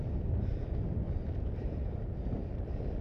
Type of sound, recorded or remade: recorded